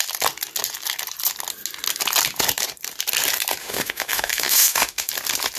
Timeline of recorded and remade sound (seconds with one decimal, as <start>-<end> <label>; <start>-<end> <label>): 0.0-3.6 recorded; 3.6-5.1 remade; 5.1-5.6 recorded